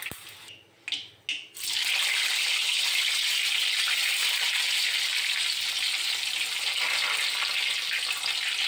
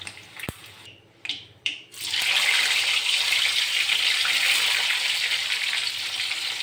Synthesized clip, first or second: second